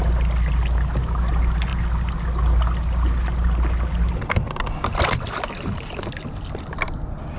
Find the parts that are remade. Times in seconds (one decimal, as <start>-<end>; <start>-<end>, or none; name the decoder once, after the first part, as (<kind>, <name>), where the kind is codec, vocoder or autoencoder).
none

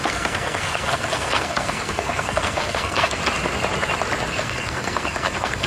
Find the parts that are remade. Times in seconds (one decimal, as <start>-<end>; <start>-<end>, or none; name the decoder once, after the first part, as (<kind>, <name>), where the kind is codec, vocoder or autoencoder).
0.0-3.2 (codec, SNAC); 4.3-5.7